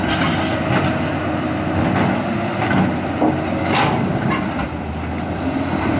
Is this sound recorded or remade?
recorded